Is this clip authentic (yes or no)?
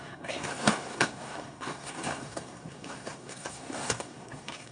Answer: no